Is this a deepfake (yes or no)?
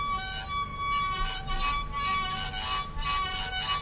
no